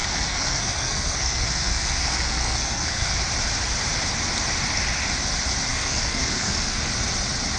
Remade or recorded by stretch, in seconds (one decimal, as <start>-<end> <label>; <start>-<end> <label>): 0.0-3.2 remade; 3.2-5.7 recorded; 5.7-6.8 remade; 6.8-7.6 recorded